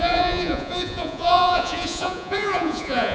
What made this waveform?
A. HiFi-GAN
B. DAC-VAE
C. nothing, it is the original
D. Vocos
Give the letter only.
D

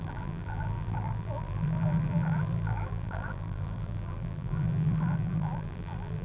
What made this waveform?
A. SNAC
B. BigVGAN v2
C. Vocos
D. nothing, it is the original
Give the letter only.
B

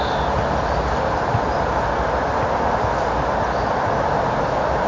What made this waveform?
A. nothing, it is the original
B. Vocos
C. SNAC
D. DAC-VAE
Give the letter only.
A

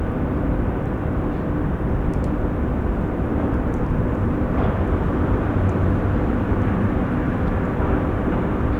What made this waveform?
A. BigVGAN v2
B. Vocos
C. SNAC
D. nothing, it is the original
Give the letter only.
A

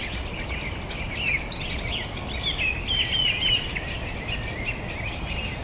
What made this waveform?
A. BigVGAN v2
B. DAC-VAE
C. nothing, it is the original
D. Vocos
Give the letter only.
C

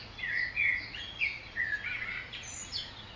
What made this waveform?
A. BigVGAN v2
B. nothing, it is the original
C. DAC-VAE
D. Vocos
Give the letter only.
D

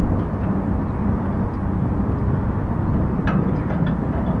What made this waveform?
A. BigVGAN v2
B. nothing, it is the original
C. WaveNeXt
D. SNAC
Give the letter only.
B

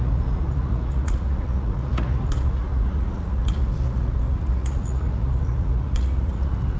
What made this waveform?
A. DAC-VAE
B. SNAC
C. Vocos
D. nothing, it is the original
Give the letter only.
C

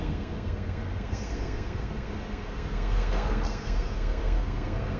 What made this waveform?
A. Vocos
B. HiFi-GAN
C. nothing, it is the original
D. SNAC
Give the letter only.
D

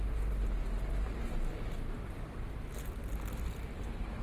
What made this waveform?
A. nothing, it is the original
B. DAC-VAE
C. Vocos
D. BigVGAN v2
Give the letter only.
A